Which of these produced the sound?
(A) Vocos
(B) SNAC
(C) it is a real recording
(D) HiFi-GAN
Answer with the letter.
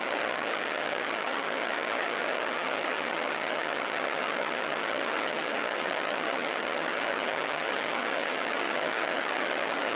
D